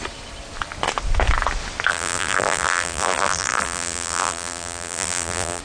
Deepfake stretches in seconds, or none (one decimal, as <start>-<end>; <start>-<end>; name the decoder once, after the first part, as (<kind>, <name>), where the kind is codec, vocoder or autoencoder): 1.9-5.6 (vocoder, BigVGAN v2)